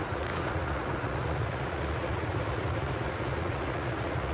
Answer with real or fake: fake